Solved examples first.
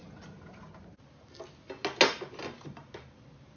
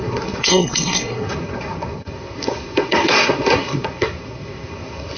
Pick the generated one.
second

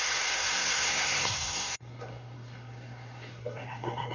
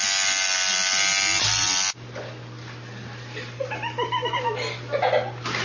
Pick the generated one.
first